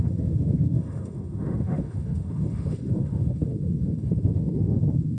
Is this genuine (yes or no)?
no